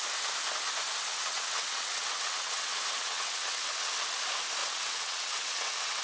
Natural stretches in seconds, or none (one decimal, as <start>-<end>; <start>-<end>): 0.0-1.1; 3.9-4.6